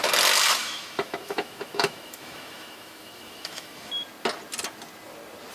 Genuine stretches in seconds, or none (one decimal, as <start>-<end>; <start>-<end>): 0.0-0.6; 3.9-5.5